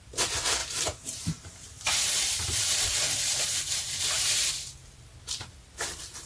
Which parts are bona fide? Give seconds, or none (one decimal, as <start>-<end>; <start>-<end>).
0.0-0.6; 4.4-6.3